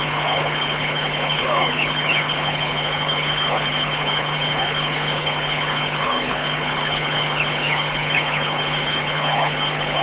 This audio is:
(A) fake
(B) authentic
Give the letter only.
A